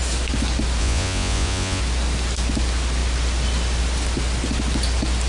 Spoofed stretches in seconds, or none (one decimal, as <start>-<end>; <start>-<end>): 0.8-1.8